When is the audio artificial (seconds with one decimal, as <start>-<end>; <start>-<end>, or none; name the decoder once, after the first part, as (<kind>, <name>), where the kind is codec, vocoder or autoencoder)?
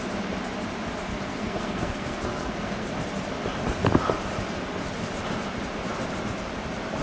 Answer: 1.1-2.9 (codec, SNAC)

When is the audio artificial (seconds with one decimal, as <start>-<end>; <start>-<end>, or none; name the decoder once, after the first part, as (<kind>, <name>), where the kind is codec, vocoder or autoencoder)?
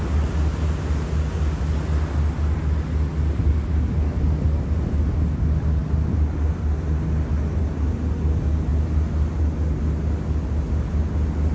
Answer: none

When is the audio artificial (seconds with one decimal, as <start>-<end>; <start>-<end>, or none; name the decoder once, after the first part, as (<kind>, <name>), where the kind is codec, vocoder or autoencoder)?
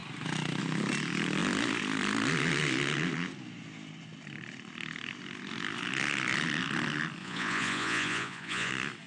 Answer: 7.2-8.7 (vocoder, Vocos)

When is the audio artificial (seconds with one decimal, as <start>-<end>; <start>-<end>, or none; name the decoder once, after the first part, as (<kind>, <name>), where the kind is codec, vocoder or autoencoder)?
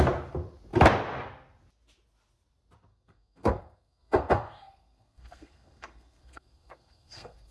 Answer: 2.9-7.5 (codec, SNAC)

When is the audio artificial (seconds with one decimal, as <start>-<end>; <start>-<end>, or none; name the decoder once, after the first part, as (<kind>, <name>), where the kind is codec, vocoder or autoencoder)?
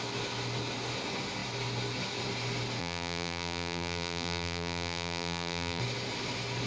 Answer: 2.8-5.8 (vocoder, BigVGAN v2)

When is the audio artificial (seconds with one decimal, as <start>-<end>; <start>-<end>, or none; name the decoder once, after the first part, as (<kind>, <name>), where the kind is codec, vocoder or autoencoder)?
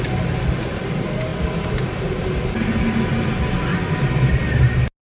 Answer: none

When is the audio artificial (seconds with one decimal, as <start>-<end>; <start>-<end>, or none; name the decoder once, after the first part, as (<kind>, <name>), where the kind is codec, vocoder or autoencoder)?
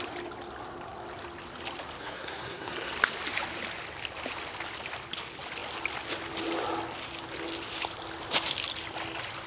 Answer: 2.0-2.9 (codec, SNAC)